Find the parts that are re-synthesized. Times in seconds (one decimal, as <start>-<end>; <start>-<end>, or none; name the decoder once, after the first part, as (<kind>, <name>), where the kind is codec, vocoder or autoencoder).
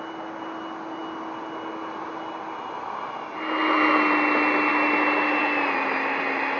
none